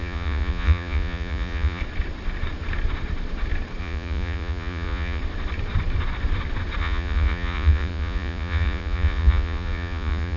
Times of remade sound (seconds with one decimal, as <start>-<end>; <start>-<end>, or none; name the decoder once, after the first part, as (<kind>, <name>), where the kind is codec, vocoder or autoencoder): 0.0-1.8 (vocoder, Vocos); 3.8-5.2; 6.8-10.4